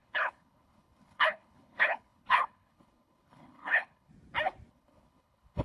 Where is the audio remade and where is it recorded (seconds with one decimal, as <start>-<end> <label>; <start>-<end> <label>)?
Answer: 0.0-4.1 remade; 4.1-4.7 recorded; 4.7-5.6 remade